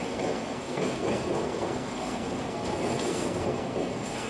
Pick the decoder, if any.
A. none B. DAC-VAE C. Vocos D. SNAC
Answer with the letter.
D